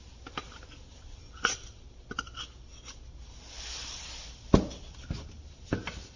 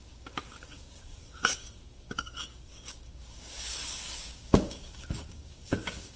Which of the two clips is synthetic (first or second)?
second